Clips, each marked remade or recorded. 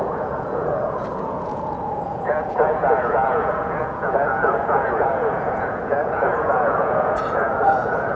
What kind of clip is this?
remade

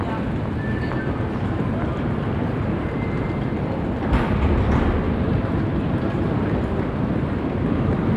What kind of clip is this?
recorded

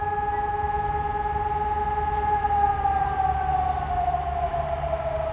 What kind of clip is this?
recorded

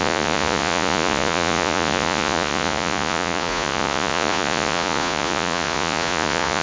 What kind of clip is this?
remade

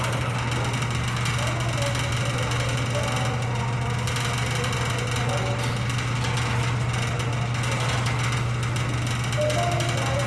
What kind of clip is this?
recorded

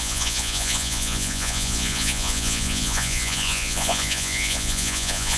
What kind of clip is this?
remade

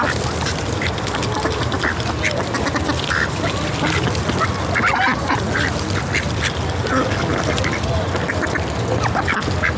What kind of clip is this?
recorded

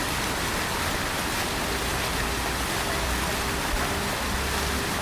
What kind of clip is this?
recorded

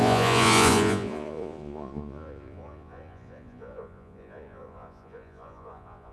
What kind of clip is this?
remade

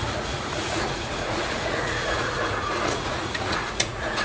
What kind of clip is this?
remade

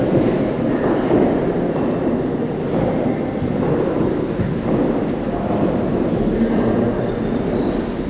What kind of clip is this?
recorded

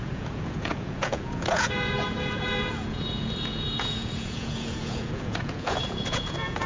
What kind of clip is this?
remade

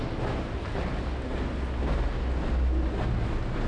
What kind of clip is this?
recorded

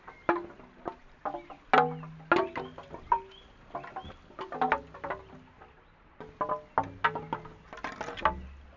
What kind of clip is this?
recorded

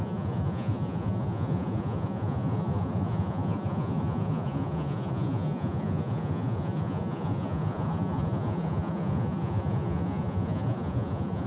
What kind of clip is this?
remade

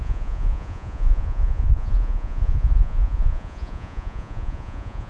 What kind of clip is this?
remade